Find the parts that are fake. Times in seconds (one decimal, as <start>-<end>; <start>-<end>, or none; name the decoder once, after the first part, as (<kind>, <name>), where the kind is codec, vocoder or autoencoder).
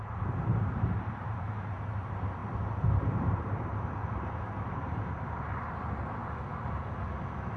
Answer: 0.0-2.4 (vocoder, BigVGAN v2); 3.3-6.2